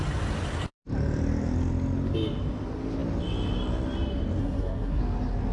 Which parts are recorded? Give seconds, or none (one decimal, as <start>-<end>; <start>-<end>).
0.0-4.4; 5.0-5.5